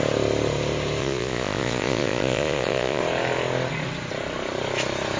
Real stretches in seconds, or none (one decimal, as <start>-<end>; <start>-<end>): 0.0-1.0; 3.0-5.2